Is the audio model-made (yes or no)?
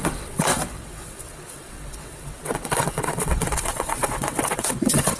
yes